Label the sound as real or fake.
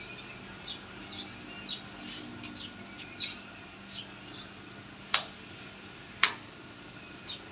real